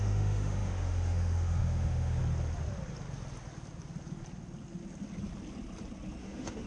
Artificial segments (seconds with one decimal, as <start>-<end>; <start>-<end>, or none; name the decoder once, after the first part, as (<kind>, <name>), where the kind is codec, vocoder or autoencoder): 0.0-2.2 (autoencoder, DAC-VAE); 6.2-6.7